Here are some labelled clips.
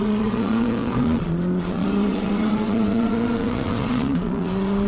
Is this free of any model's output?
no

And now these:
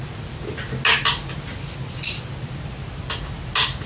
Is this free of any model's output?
yes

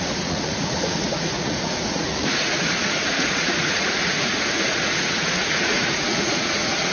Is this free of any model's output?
no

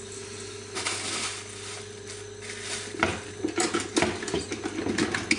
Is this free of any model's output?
yes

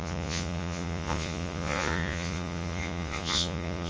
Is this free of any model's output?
no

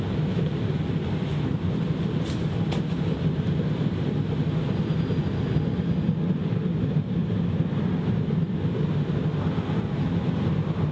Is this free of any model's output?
yes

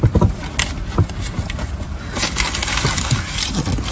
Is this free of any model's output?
yes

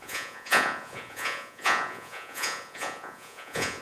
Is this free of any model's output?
no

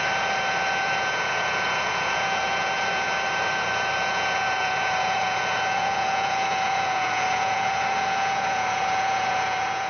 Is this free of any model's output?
no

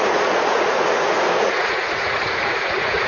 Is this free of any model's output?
no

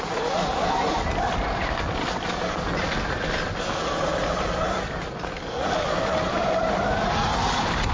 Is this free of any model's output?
yes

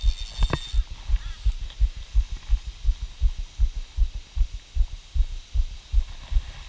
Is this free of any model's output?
yes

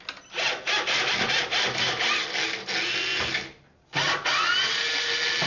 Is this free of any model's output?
yes